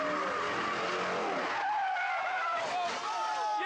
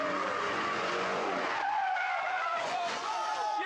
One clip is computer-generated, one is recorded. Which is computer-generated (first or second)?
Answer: second